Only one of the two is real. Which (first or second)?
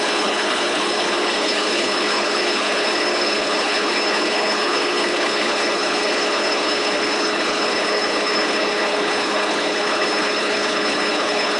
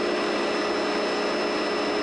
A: second